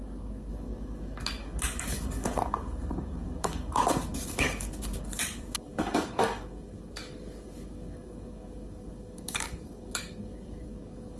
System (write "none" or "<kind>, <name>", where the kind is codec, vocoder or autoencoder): codec, DAC